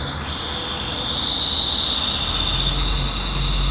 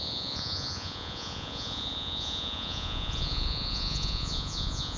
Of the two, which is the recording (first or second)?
first